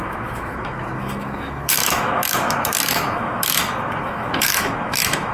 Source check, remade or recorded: remade